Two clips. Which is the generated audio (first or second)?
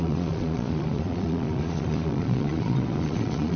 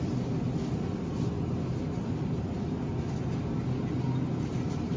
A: first